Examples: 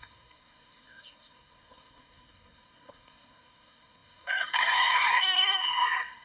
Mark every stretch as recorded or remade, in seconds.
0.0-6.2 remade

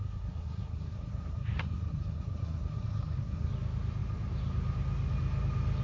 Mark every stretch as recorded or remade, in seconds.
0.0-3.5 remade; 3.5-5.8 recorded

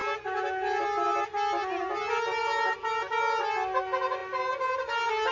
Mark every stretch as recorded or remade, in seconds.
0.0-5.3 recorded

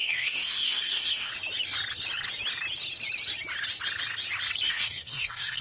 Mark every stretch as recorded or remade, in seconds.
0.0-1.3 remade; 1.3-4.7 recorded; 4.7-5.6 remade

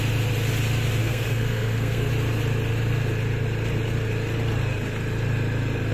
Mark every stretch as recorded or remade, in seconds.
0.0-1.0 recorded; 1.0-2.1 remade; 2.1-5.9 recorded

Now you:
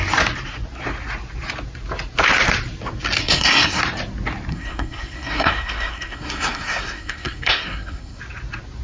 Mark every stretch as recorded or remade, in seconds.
0.0-3.2 recorded; 3.2-3.8 remade; 3.8-4.5 recorded; 4.5-8.2 remade; 8.2-8.8 recorded

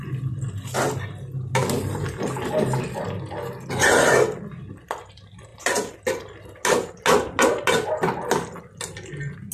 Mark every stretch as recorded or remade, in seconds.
0.0-9.5 recorded

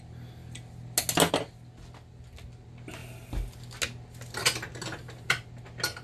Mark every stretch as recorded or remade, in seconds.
0.0-6.0 recorded